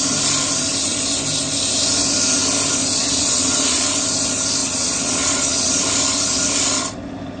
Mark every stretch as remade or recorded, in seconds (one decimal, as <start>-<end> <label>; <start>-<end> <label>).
0.0-3.0 recorded; 3.0-3.8 remade; 3.8-4.6 recorded; 4.6-5.7 remade; 5.7-7.4 recorded